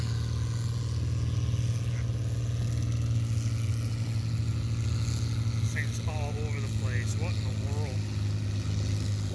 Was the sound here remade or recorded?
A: recorded